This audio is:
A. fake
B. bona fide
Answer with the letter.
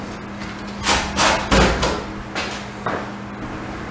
B